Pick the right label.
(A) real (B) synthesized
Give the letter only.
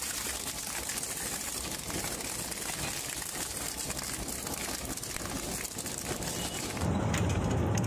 A